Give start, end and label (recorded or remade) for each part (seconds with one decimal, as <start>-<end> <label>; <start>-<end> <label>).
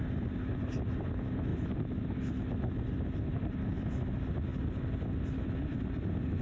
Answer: 0.0-6.4 recorded